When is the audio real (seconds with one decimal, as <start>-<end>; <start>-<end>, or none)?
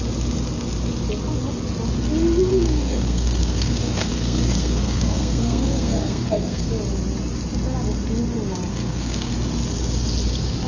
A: 0.0-2.5; 6.7-8.7; 9.3-10.7